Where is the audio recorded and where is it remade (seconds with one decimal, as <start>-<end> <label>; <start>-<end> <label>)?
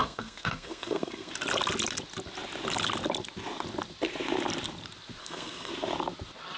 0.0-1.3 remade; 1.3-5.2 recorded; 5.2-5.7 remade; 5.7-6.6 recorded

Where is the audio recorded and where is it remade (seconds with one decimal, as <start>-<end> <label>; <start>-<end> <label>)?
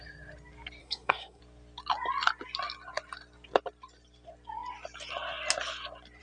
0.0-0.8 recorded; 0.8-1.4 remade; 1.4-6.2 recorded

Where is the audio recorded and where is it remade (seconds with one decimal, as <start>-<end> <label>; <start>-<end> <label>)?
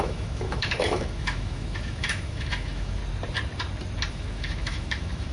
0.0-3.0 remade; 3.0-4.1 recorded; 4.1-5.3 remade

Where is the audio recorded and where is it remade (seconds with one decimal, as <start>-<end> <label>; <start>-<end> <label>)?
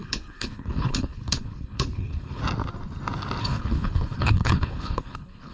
0.0-2.4 remade; 2.4-3.4 recorded; 3.4-5.5 remade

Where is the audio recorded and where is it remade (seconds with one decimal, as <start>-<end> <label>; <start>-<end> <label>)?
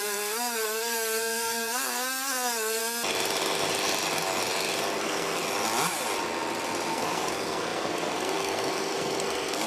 0.0-2.8 remade; 2.8-5.0 recorded; 5.0-5.4 remade; 5.4-6.9 recorded; 6.9-9.7 remade